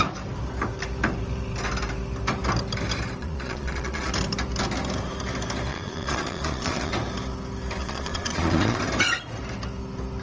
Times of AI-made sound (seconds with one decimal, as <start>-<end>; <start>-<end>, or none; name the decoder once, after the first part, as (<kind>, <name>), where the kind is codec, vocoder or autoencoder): 3.2-4.1 (vocoder, Vocos); 5.7-6.9; 7.8-8.8